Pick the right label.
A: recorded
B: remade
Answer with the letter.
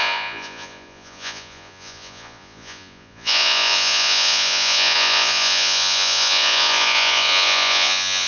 B